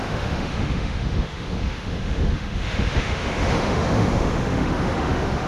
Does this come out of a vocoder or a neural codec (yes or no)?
yes